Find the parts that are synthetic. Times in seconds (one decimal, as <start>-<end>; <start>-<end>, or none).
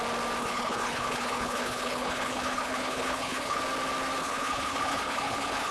0.4-3.6; 4.2-5.7